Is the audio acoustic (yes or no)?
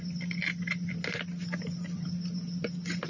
yes